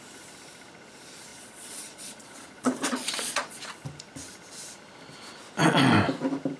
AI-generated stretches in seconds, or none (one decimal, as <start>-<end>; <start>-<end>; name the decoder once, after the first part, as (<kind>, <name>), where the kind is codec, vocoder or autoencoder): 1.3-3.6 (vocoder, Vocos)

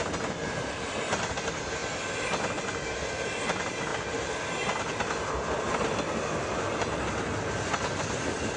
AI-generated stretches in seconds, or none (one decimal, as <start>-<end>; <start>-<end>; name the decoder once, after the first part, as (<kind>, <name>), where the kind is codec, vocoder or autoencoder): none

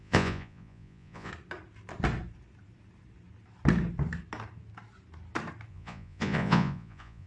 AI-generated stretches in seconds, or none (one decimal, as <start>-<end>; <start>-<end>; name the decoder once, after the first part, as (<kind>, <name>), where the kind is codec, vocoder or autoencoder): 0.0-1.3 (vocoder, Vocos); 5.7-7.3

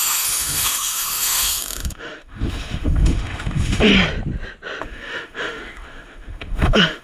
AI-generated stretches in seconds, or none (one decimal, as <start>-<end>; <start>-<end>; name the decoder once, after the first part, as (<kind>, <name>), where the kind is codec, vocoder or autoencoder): 0.0-3.9 (autoencoder, DAC-VAE); 4.8-7.0

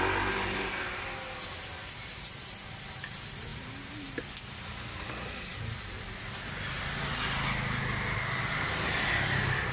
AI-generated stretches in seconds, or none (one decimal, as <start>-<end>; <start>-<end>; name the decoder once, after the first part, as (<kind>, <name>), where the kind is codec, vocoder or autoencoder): none